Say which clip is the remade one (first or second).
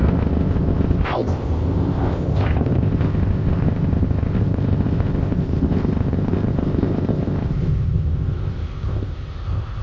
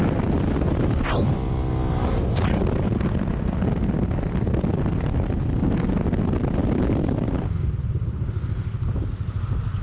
first